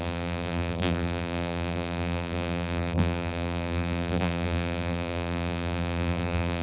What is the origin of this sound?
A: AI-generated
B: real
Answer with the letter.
A